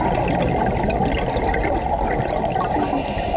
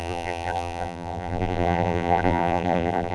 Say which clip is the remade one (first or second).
second